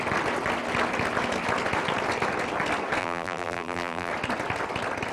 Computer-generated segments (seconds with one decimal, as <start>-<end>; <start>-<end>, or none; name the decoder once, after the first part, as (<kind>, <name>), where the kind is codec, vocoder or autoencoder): 3.0-4.1 (vocoder, BigVGAN v2)